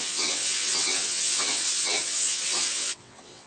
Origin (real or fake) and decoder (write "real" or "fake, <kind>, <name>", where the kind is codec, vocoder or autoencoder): fake, vocoder, WaveNeXt